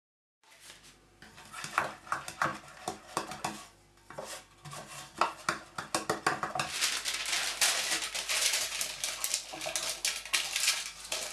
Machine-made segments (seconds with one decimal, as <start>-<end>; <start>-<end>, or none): 2.5-3.4